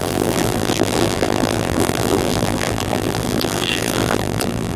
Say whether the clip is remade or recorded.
remade